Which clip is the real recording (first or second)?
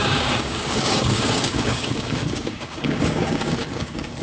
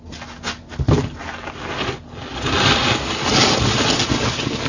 second